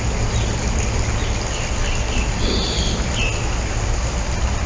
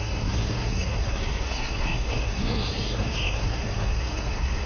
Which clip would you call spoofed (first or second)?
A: second